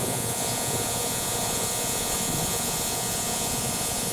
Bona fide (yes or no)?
no